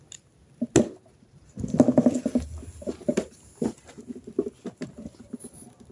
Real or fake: real